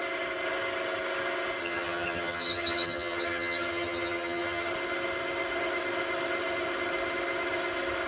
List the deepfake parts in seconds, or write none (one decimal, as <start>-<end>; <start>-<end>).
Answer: 1.6-4.7